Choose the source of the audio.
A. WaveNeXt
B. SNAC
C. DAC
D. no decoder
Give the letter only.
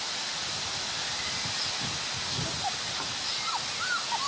D